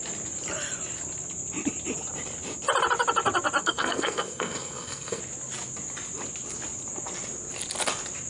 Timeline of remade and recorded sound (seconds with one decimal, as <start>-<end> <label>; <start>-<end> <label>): 0.0-3.6 recorded; 3.6-5.2 remade; 5.2-8.3 recorded